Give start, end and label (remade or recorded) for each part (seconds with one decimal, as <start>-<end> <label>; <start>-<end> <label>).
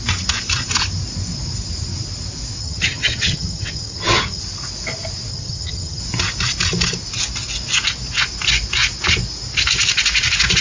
0.0-2.6 recorded; 2.6-4.4 remade; 4.4-5.3 recorded; 5.3-6.0 remade; 6.0-10.6 recorded